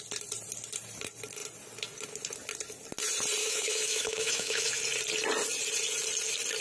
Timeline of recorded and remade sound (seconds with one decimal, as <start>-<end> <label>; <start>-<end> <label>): 0.0-3.4 recorded; 3.4-4.8 remade; 4.8-6.6 recorded